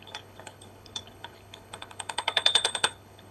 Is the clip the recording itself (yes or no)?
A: no